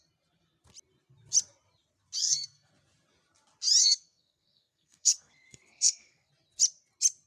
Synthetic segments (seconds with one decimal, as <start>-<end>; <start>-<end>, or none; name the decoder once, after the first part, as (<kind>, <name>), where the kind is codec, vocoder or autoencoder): 2.2-2.7 (codec, SNAC); 3.8-6.3

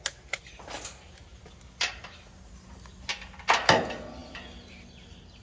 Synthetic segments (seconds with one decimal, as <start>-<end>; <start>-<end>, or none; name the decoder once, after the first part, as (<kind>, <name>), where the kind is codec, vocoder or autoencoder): none

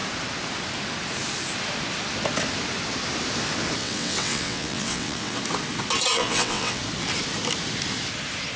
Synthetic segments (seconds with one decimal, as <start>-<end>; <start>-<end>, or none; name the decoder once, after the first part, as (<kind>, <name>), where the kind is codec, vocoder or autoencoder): 3.8-5.4 (vocoder, WaveNeXt); 6.1-6.8